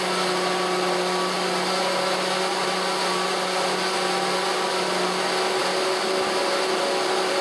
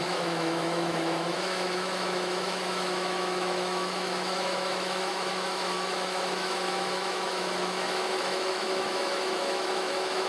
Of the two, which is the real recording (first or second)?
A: first